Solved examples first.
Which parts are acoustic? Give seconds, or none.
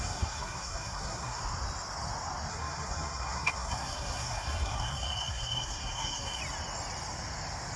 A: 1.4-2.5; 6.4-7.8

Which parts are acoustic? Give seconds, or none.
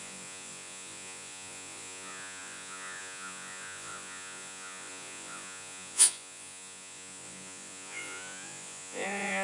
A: none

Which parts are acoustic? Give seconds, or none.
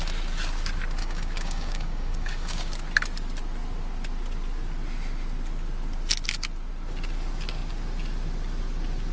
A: 0.0-1.0; 2.7-9.1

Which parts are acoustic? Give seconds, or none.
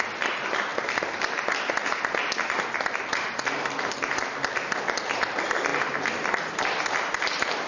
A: 0.0-7.7